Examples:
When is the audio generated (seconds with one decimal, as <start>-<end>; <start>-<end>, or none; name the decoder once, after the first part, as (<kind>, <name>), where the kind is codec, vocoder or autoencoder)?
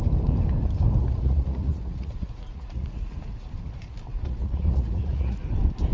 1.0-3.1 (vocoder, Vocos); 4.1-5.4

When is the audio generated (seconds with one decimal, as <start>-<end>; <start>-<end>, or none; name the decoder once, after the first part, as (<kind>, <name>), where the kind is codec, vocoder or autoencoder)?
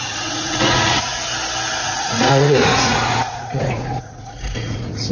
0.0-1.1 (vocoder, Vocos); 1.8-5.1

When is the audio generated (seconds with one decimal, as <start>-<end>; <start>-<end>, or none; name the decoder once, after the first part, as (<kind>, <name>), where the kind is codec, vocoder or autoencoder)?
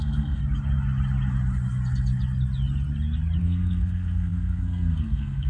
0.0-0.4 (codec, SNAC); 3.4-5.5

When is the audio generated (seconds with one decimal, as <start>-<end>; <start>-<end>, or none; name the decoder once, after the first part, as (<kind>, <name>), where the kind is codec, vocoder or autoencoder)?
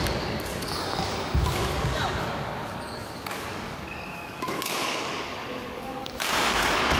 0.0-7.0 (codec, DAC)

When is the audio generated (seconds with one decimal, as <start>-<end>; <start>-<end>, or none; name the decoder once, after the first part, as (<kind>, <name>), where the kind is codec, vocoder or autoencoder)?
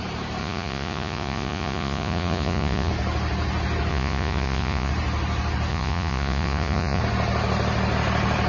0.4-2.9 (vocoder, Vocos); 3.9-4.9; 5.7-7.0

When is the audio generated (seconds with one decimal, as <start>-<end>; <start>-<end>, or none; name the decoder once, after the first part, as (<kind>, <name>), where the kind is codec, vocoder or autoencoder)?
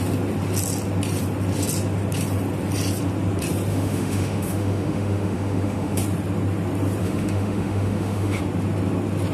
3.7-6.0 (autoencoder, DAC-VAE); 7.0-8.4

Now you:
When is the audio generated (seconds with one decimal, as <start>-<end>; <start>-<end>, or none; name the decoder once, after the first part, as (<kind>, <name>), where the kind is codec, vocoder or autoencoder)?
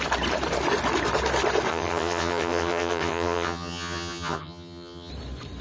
1.7-5.1 (vocoder, HiFi-GAN)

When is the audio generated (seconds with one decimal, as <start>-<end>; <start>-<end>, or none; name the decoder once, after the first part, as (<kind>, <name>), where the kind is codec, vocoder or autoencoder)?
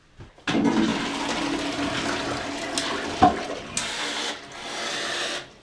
none